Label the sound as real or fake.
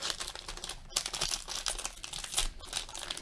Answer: real